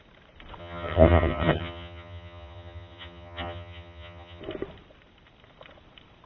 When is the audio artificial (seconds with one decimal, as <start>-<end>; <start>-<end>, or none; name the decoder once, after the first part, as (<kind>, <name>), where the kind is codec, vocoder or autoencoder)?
0.6-4.4 (vocoder, HiFi-GAN)